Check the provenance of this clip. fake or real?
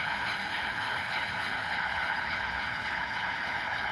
fake